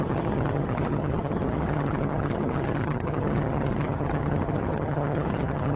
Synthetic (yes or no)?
yes